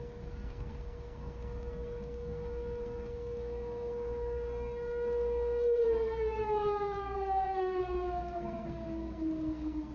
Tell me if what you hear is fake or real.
fake